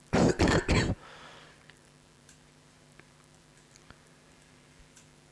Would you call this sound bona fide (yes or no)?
no